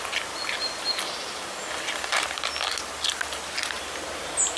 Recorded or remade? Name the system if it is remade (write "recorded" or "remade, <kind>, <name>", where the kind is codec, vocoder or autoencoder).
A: recorded